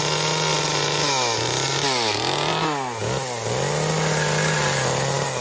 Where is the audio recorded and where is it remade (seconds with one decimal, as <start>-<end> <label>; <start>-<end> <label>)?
0.0-5.4 recorded